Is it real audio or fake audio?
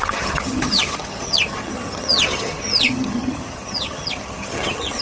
fake